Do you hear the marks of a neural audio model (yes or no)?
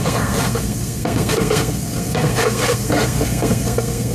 yes